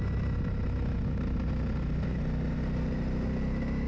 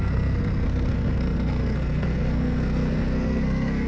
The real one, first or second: first